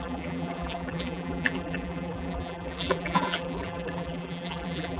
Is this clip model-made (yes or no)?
yes